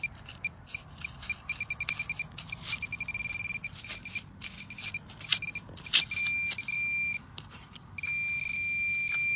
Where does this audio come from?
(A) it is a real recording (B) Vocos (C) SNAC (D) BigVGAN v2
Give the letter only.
A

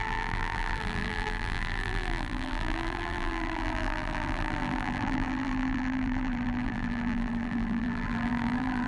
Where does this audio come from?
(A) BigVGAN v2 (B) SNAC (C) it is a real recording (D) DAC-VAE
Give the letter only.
A